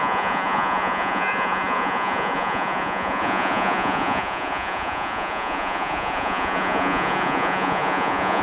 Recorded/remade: remade